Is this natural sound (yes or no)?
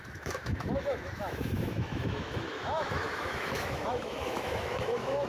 no